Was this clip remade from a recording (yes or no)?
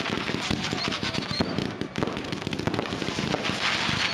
no